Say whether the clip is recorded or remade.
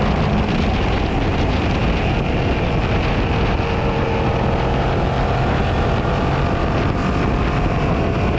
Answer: recorded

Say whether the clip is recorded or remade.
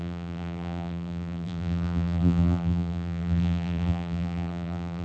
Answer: remade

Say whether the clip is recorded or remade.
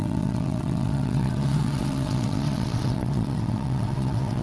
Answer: remade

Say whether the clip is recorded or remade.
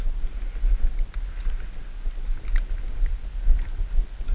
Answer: recorded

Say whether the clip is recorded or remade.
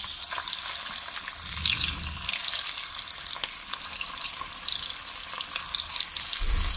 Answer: recorded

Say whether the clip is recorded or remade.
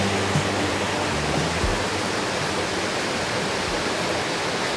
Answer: recorded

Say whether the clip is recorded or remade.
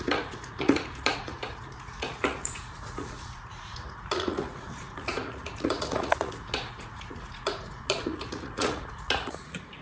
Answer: remade